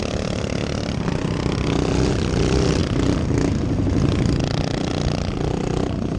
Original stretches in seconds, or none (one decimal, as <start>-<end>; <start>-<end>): 0.0-6.2